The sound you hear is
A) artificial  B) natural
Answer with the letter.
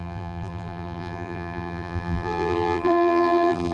A